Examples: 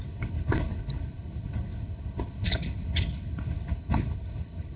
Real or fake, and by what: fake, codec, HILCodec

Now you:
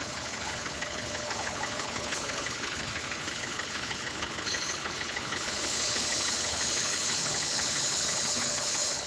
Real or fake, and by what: fake, codec, HILCodec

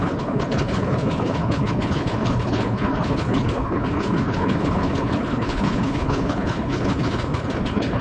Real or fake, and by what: fake, codec, HILCodec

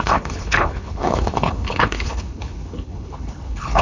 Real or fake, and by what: fake, codec, HILCodec